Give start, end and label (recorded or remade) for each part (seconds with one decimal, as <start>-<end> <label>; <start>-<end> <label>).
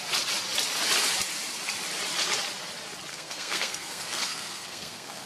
0.0-3.1 recorded; 3.1-5.3 remade